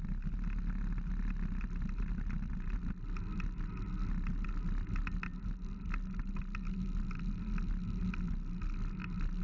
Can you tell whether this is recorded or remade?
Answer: recorded